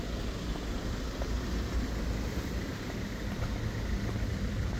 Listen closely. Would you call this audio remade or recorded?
recorded